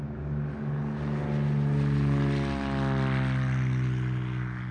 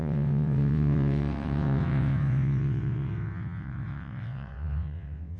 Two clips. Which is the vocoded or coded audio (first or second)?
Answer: second